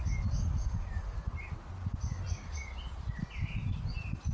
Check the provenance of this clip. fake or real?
real